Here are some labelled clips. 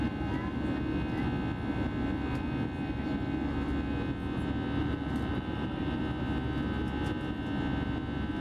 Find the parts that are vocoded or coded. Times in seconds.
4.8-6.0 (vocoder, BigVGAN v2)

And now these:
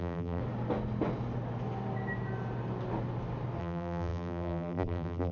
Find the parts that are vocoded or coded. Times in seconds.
0.0-0.4 (vocoder, BigVGAN v2); 3.6-5.3

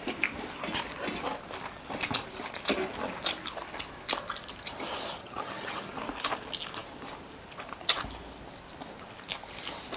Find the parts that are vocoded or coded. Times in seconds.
5.2-5.9 (vocoder, HiFi-GAN)

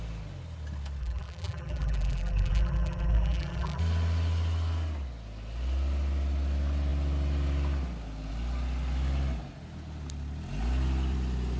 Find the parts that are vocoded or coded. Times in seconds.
1.0-3.8 (vocoder, BigVGAN v2)

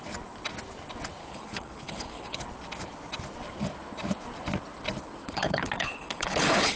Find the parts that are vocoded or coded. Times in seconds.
1.2-2.4 (codec, HILCodec); 5.2-6.8

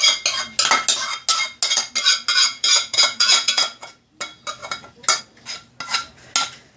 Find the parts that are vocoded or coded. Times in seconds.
2.3-3.9 (vocoder, Vocos)